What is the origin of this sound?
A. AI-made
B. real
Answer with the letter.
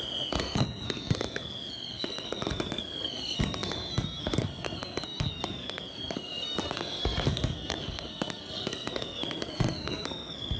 A